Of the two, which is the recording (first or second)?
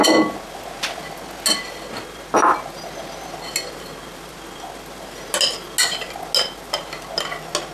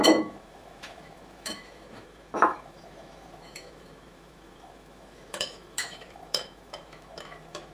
first